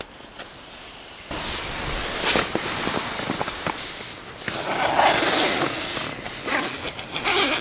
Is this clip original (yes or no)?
yes